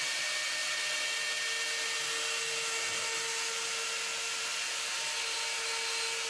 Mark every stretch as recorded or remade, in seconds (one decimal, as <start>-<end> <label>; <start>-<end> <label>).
0.0-6.3 recorded